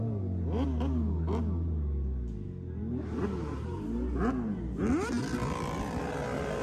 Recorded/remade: recorded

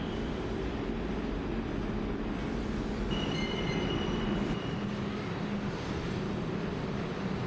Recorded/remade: recorded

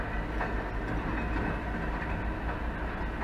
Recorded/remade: recorded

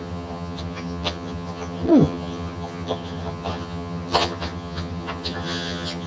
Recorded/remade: remade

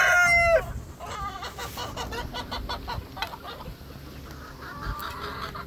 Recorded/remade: recorded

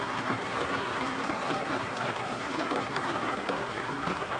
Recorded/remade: remade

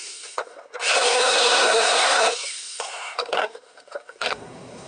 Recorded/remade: remade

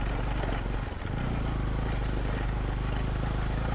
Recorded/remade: recorded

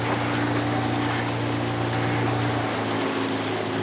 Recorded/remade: recorded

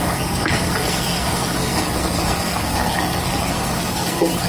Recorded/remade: remade